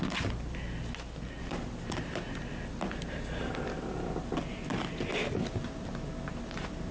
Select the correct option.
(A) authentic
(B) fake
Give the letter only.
A